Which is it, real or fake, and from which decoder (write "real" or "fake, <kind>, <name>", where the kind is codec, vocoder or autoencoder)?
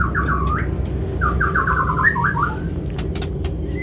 real